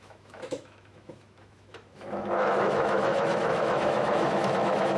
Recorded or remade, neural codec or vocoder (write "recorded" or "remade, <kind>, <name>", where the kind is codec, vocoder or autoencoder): remade, autoencoder, DAC-VAE